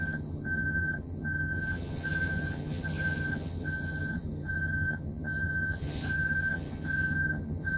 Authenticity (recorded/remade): remade